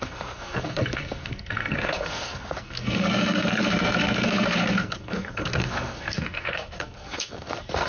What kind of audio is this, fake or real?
fake